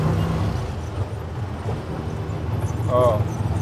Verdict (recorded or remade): recorded